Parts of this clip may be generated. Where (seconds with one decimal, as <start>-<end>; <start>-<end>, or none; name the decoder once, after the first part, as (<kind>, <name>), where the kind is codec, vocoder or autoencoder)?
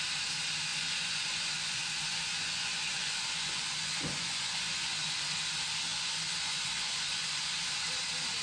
0.7-5.4 (vocoder, Vocos); 5.9-7.9